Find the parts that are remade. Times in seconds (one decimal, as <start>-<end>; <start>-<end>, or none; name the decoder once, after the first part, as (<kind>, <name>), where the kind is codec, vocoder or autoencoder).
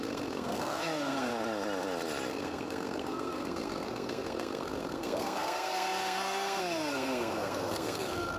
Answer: 0.0-1.3 (codec, SNAC); 2.3-8.4